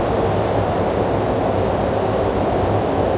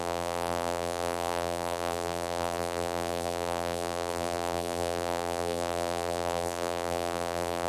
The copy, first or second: second